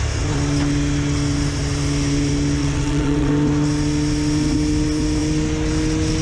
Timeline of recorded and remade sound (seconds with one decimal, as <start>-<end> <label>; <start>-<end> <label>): 0.0-2.6 recorded; 2.6-3.3 remade; 3.3-6.2 recorded